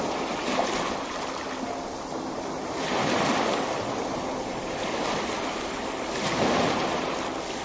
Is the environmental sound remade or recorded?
recorded